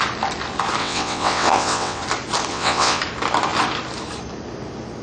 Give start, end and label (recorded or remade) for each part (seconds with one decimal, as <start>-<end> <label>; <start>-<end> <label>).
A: 0.0-0.8 recorded; 0.8-2.0 remade; 2.0-2.5 recorded; 2.5-3.0 remade; 3.0-5.0 recorded